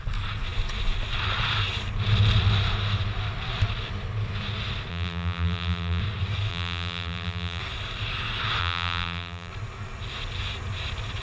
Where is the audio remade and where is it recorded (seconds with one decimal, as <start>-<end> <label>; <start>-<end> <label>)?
0.0-4.9 recorded; 4.9-6.0 remade; 6.0-6.5 recorded; 6.5-7.6 remade; 7.6-8.6 recorded; 8.6-9.5 remade; 9.5-11.2 recorded